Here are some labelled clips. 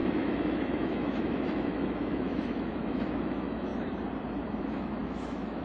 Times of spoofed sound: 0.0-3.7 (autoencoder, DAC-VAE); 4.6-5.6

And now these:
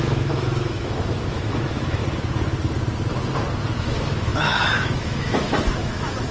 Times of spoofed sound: 0.0-2.0 (autoencoder, DAC-VAE); 3.8-6.3

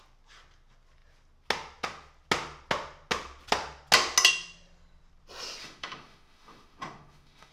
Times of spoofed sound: 5.6-7.5 (autoencoder, DAC-VAE)

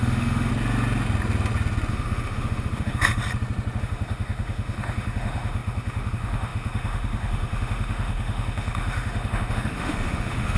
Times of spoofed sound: 0.0-0.5 (autoencoder, DAC-VAE); 1.9-3.2; 3.8-10.6

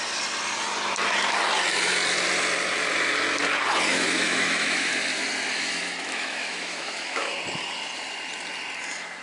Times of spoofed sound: 3.9-4.9 (autoencoder, DAC-VAE); 5.5-7.3

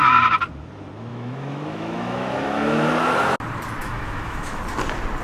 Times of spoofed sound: 1.1-2.9 (autoencoder, DAC-VAE); 3.8-4.6

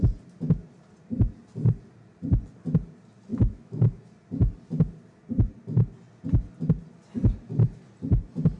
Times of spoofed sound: 3.3-4.0 (autoencoder, DAC-VAE)